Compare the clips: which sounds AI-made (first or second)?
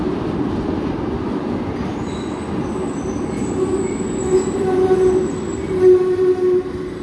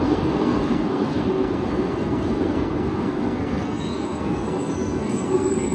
second